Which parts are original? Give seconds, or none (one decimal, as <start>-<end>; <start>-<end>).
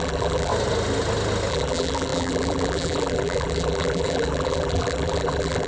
0.5-1.5